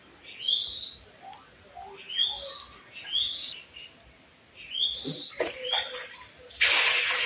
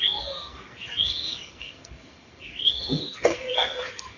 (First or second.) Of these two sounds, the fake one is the second